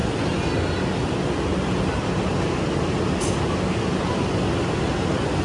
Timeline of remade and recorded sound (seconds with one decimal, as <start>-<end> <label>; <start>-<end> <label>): 0.0-5.4 recorded